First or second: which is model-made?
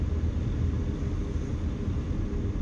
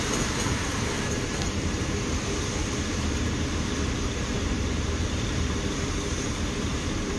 second